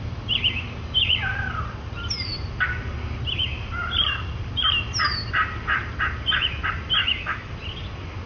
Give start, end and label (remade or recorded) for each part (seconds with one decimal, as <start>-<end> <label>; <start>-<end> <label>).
0.0-7.0 recorded; 7.0-7.5 remade; 7.5-8.3 recorded